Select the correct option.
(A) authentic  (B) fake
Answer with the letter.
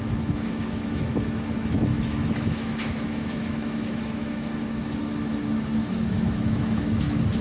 B